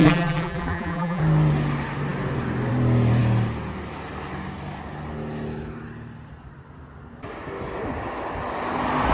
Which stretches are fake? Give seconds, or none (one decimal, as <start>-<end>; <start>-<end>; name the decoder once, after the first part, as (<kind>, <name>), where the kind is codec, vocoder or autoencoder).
0.0-1.2 (vocoder, BigVGAN v2)